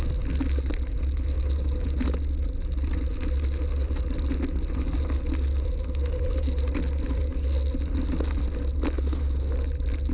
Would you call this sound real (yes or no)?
yes